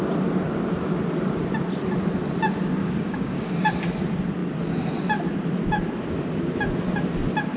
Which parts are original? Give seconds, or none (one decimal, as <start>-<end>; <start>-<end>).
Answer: 0.0-2.8; 3.7-7.6